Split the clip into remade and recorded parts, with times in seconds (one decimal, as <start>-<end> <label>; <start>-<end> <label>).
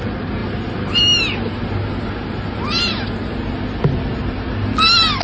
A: 0.0-5.2 recorded